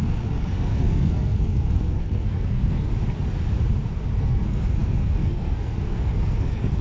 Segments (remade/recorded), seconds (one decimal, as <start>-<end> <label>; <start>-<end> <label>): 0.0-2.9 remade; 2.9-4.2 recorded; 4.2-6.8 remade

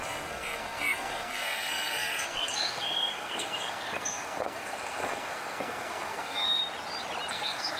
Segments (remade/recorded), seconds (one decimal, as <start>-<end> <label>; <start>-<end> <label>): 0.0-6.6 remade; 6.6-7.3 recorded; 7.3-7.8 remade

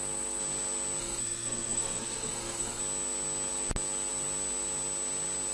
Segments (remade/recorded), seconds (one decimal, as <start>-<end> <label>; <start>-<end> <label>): 0.0-1.0 recorded; 1.0-2.8 remade; 2.8-5.5 recorded